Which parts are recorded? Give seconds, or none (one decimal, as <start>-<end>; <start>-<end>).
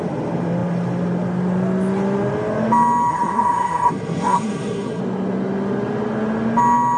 0.0-3.1; 5.0-7.0